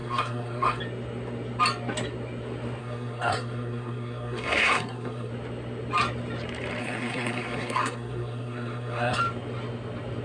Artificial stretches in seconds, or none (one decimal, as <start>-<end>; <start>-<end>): 0.0-0.8; 2.8-5.3; 6.8-9.2